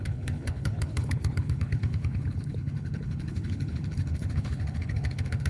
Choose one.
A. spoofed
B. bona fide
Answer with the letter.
A